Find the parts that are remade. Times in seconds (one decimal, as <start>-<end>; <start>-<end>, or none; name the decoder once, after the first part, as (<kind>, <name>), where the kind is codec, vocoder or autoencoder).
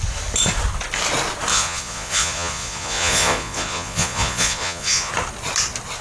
1.5-5.1 (vocoder, Vocos)